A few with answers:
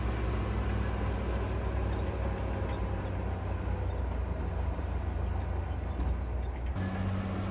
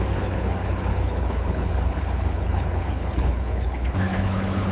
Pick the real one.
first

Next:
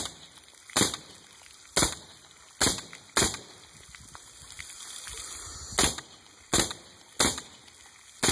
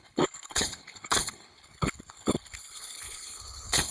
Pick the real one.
first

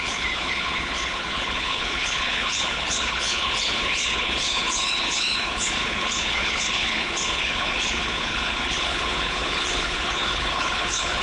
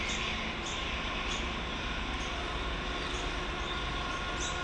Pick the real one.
second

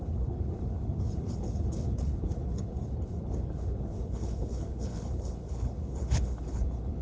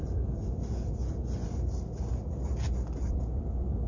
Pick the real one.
second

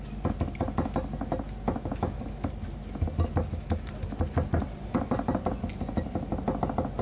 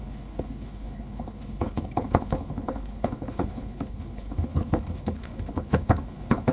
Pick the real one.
first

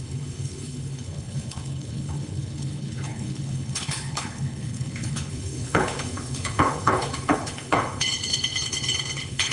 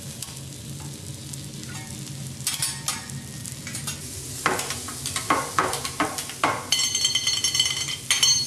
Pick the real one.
second